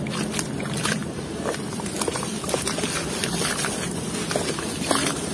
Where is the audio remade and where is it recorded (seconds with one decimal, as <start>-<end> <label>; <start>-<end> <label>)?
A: 0.0-1.0 recorded; 1.0-4.2 remade; 4.2-5.3 recorded